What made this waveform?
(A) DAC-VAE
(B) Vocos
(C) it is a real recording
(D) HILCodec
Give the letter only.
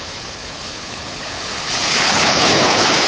D